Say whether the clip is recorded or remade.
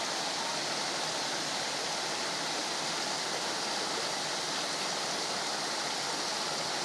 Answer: recorded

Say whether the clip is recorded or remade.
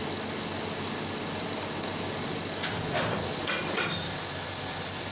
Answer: recorded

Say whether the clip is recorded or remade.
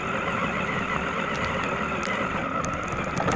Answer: recorded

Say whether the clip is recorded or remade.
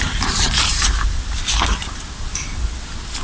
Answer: recorded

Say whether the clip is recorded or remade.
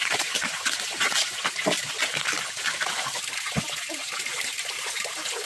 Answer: recorded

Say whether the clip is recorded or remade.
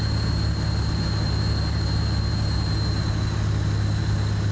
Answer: recorded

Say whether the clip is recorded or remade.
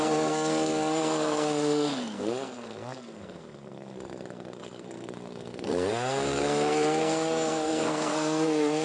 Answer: remade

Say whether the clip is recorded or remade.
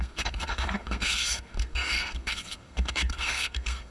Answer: remade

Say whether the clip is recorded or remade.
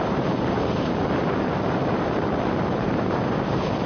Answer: remade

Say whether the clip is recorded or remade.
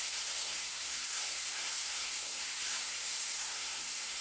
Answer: remade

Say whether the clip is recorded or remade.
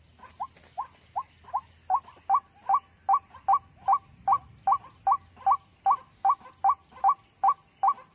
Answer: recorded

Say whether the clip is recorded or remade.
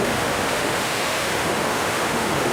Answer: remade